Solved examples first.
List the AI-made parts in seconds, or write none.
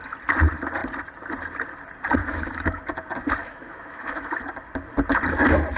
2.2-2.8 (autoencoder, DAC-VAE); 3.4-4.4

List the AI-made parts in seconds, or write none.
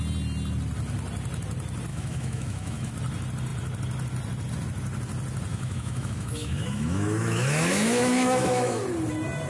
1.9-2.9 (autoencoder, DAC-VAE); 5.5-8.8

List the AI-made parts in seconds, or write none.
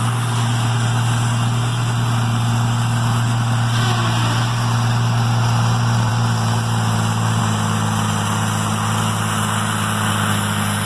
none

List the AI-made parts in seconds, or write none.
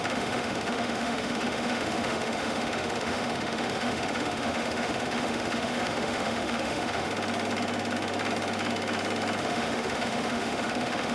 0.0-7.1 (autoencoder, DAC-VAE); 9.4-11.1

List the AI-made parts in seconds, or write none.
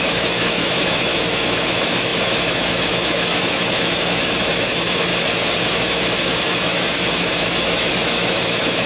0.0-5.1 (autoencoder, DAC-VAE); 5.6-8.9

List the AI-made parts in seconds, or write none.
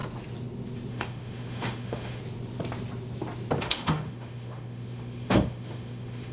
0.9-2.2 (autoencoder, DAC-VAE); 3.6-6.3